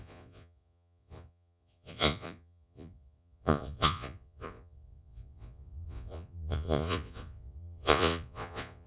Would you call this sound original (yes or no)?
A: no